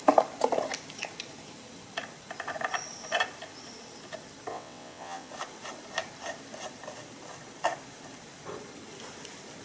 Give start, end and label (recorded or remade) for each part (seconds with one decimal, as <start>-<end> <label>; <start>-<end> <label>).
0.0-4.5 recorded; 4.5-5.3 remade; 5.3-9.6 recorded